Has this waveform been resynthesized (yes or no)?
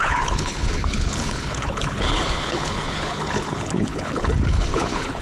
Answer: yes